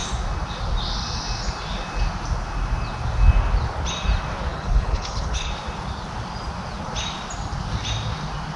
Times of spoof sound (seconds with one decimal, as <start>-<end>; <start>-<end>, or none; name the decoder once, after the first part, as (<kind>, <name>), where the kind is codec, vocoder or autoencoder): 4.5-5.5 (codec, HILCodec)